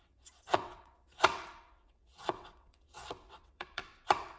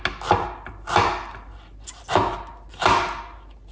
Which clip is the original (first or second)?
second